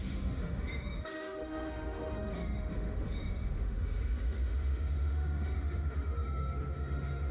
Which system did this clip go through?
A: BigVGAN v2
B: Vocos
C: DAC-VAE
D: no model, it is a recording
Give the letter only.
C